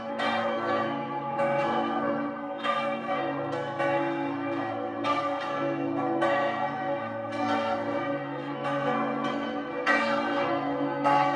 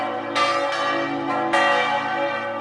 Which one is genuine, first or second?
second